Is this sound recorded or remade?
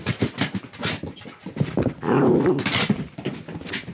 recorded